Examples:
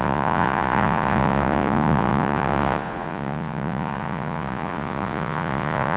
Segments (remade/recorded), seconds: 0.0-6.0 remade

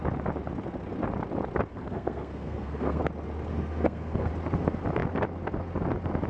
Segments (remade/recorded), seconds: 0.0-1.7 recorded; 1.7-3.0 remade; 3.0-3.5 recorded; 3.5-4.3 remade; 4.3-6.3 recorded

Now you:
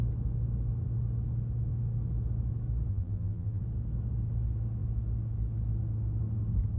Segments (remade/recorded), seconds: 0.0-2.9 recorded; 2.9-3.6 remade; 3.6-6.8 recorded

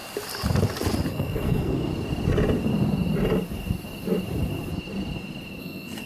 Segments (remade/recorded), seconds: 0.0-1.1 recorded; 1.1-1.9 remade; 1.9-5.6 recorded; 5.6-6.1 remade

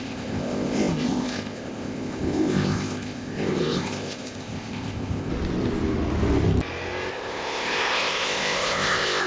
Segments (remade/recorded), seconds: 0.0-5.3 remade; 5.3-7.1 recorded; 7.1-9.3 remade

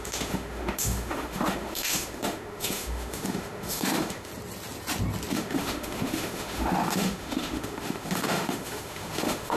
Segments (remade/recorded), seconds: 0.0-4.3 remade; 4.3-5.3 recorded; 5.3-9.6 remade

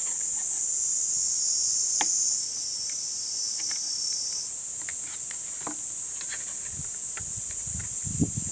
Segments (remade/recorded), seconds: 0.0-8.5 recorded

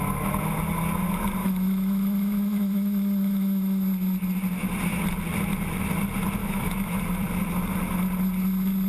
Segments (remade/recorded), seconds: 0.0-1.4 recorded; 1.4-3.8 remade; 3.8-6.4 recorded; 6.4-7.0 remade; 7.0-8.9 recorded